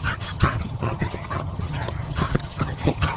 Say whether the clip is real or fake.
fake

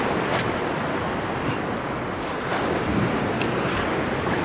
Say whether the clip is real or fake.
real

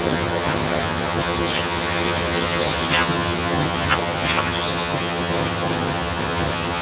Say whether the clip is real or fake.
fake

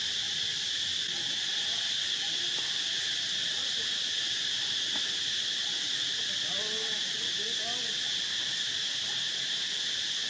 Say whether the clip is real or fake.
real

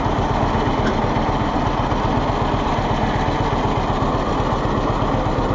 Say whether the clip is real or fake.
real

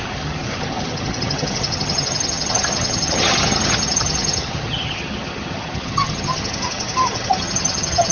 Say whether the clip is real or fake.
fake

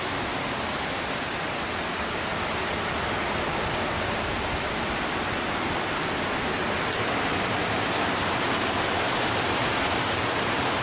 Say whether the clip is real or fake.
real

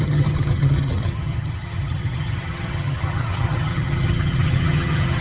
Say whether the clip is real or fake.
fake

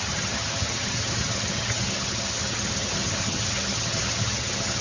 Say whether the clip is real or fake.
fake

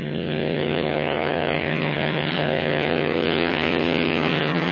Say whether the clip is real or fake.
fake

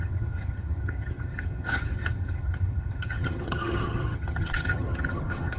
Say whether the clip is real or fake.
fake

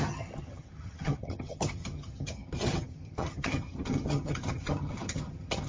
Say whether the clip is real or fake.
fake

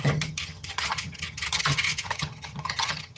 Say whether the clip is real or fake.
fake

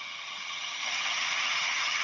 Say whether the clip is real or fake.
fake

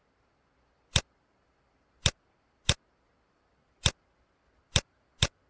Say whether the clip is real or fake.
real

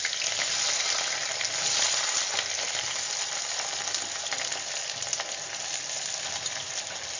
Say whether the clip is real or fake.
real